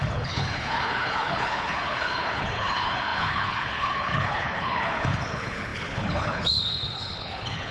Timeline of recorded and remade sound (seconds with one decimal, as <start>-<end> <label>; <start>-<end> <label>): 0.0-7.7 remade